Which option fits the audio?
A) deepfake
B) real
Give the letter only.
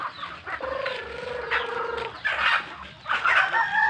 B